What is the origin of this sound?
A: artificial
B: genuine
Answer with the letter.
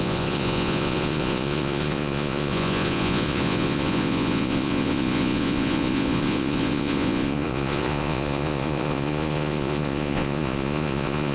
A